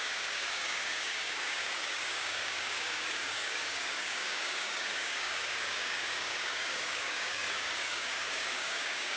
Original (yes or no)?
no